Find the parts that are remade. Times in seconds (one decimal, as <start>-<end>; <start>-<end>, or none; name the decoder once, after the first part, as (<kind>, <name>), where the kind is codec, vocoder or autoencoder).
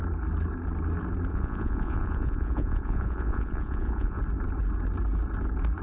1.3-4.2 (vocoder, Vocos)